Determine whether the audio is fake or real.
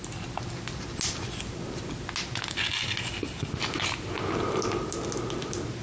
real